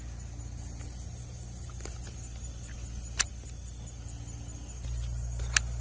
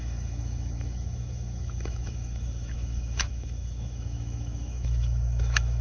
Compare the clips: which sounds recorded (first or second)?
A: first